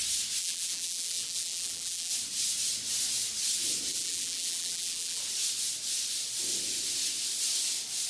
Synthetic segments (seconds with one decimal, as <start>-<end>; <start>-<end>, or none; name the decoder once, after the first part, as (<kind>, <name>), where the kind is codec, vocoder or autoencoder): 0.4-2.1 (vocoder, BigVGAN v2); 3.9-5.2